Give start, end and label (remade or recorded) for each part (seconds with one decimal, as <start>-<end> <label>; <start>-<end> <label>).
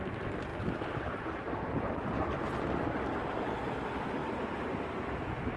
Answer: 0.0-0.5 recorded; 0.5-1.9 remade; 1.9-4.2 recorded; 4.2-5.6 remade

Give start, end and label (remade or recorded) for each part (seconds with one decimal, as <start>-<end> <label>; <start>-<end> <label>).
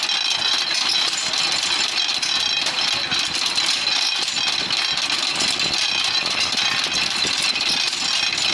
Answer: 0.0-8.5 recorded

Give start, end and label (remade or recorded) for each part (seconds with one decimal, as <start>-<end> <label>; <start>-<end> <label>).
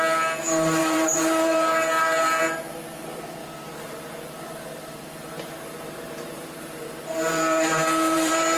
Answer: 0.0-0.8 recorded; 0.8-2.4 remade; 2.4-3.4 recorded; 3.4-8.6 remade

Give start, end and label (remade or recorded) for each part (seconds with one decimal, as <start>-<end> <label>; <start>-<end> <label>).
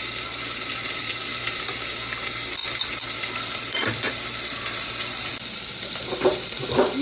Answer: 0.0-1.3 remade; 1.3-2.6 recorded; 2.6-6.6 remade; 6.6-7.0 recorded